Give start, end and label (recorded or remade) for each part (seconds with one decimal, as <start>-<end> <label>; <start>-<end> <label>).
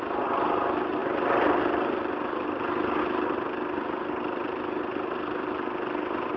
0.0-1.0 recorded; 1.0-3.0 remade; 3.0-6.4 recorded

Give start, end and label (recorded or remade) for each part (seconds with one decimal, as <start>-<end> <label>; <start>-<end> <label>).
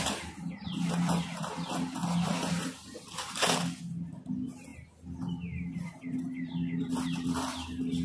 0.0-8.0 recorded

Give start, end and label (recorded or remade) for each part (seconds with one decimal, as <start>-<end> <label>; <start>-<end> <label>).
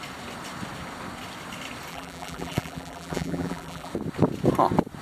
0.0-1.9 recorded; 1.9-3.9 remade; 3.9-5.0 recorded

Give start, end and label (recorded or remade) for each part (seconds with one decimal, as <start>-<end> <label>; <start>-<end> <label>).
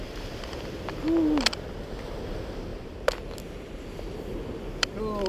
0.0-5.3 recorded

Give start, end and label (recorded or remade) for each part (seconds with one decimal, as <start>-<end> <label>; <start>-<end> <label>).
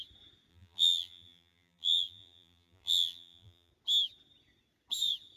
0.0-0.5 recorded; 0.5-3.7 remade; 3.7-5.4 recorded